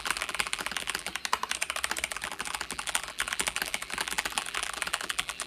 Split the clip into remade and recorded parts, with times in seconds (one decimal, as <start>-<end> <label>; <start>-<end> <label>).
0.0-1.1 remade; 1.1-2.1 recorded; 2.1-5.5 remade

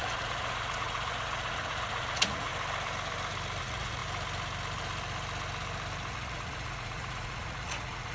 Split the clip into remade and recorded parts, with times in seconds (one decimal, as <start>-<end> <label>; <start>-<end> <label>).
0.0-2.5 remade; 2.5-3.6 recorded; 3.6-4.0 remade; 4.0-6.1 recorded; 6.1-8.1 remade

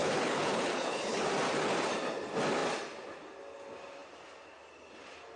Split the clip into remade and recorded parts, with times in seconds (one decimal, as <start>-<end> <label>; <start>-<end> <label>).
0.0-1.2 remade; 1.2-5.4 recorded